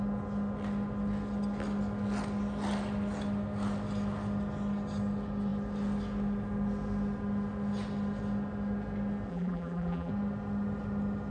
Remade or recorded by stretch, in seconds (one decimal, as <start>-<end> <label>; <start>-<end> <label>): 0.0-9.3 recorded; 9.3-10.1 remade; 10.1-11.3 recorded